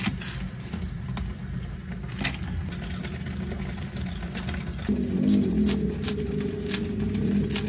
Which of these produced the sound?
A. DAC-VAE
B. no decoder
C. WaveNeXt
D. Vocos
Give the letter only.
B